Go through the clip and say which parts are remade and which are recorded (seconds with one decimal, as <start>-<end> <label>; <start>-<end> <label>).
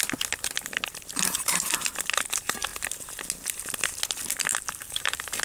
0.0-4.5 recorded; 4.5-5.4 remade